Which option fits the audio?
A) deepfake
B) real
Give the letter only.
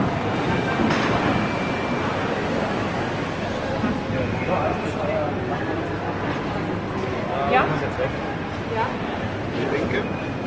B